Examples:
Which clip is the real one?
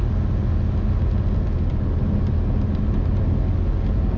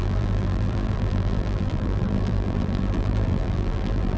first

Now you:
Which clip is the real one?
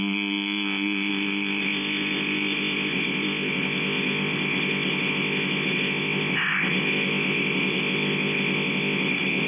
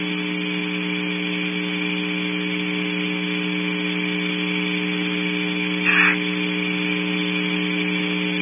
second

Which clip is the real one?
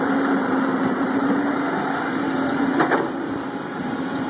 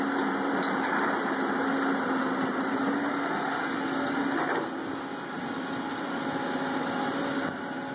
second